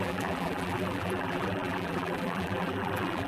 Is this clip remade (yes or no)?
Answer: yes